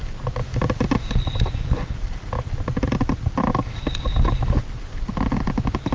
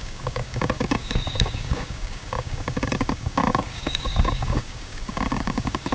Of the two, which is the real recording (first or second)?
first